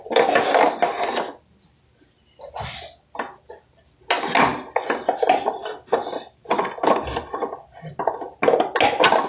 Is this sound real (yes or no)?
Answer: yes